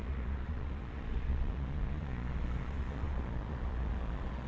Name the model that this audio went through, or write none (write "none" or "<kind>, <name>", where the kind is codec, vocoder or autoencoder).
vocoder, Vocos